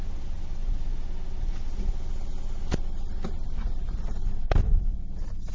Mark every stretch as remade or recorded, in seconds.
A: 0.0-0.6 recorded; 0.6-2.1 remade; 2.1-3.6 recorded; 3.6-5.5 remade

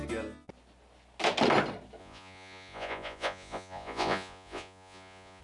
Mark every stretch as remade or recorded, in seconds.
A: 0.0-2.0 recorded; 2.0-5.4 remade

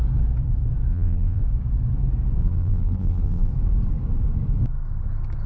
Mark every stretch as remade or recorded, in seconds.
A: 0.0-0.9 recorded; 0.9-1.4 remade; 1.4-2.4 recorded; 2.4-3.5 remade; 3.5-5.5 recorded

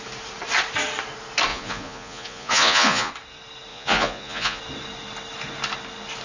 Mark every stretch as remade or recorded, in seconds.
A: 0.0-1.5 recorded; 1.5-3.1 remade; 3.1-3.7 recorded; 3.7-4.6 remade; 4.6-6.2 recorded